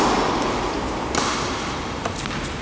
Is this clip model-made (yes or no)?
no